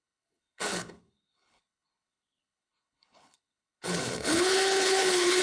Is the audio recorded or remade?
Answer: remade